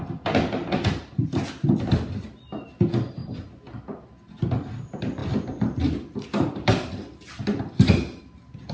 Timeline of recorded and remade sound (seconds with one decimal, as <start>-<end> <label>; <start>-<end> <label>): 0.0-8.7 recorded